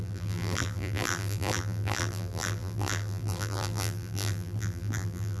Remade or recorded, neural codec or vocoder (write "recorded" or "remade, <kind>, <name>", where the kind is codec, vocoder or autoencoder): remade, vocoder, BigVGAN v2